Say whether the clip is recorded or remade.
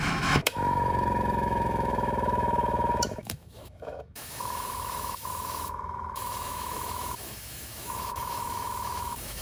remade